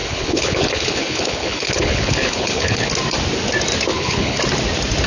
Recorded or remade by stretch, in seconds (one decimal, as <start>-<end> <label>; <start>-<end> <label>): 0.0-2.9 remade; 2.9-3.9 recorded; 3.9-4.4 remade; 4.4-5.1 recorded